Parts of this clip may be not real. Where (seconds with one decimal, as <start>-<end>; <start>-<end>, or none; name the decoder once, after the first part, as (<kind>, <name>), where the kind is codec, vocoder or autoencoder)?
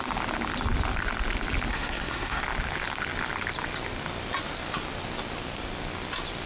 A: 1.7-2.4 (codec, SNAC)